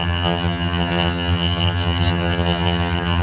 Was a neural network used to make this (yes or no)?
yes